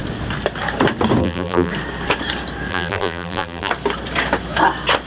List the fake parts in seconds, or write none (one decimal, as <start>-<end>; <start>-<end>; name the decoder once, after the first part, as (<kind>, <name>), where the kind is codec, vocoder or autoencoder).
1.2-1.7 (vocoder, BigVGAN v2); 2.7-3.7